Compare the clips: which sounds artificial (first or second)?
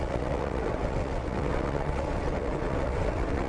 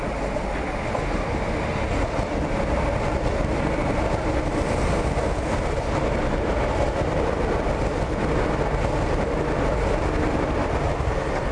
first